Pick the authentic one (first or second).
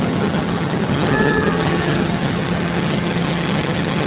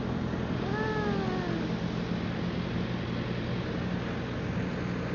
second